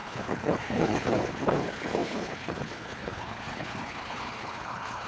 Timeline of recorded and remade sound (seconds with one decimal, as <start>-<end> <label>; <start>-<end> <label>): 0.0-5.1 remade